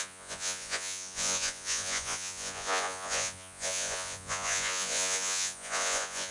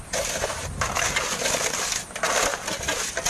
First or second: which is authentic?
second